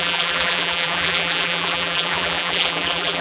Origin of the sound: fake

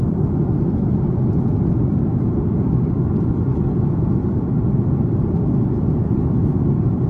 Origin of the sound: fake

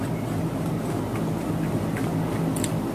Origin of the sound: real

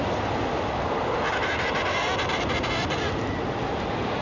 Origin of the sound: real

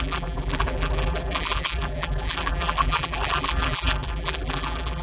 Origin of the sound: fake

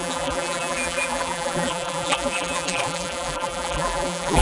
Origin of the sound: fake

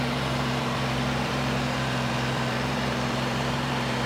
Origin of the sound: fake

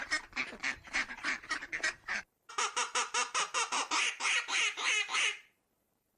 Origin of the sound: fake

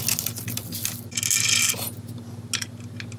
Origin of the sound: real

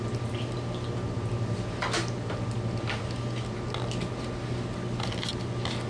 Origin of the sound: real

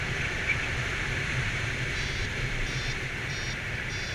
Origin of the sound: fake